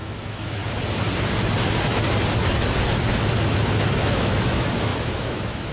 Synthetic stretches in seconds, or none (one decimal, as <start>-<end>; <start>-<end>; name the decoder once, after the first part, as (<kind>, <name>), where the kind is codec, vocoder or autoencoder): 0.0-0.6 (autoencoder, DAC-VAE); 3.4-5.7